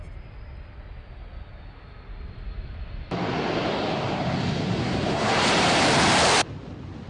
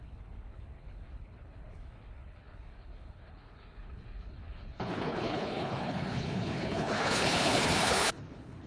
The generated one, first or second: second